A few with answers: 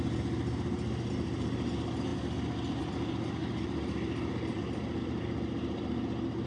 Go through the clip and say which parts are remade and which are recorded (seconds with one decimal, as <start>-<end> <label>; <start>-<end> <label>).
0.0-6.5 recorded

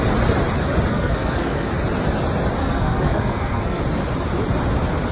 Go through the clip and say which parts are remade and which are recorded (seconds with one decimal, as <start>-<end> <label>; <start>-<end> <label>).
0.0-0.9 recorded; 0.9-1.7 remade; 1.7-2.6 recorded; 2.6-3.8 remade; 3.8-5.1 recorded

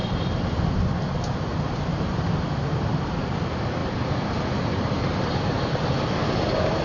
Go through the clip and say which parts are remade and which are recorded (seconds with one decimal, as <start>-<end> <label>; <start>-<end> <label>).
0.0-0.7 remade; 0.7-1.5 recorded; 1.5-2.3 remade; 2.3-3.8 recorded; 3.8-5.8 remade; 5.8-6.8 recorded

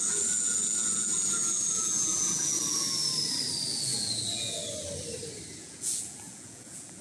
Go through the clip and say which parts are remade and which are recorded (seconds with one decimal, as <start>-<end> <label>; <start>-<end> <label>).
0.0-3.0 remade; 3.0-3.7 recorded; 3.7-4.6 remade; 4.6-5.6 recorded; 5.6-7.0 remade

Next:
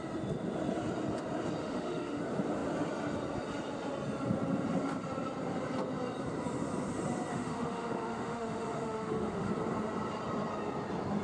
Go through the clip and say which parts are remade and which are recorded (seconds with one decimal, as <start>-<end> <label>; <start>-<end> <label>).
0.0-1.6 recorded; 1.6-2.2 remade; 2.2-7.3 recorded; 7.3-9.5 remade; 9.5-11.2 recorded

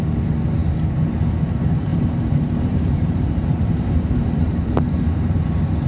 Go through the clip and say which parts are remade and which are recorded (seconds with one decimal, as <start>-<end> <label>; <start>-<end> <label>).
0.0-1.9 recorded; 1.9-5.4 remade; 5.4-5.9 recorded

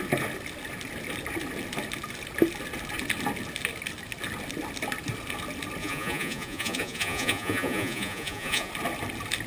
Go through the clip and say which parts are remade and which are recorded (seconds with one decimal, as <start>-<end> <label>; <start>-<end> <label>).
0.0-5.8 recorded; 5.8-8.7 remade; 8.7-9.5 recorded

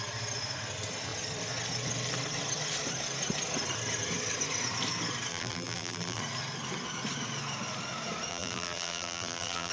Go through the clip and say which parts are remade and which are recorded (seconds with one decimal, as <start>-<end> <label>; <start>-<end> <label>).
0.0-5.3 recorded; 5.3-6.2 remade; 6.2-8.3 recorded; 8.3-9.7 remade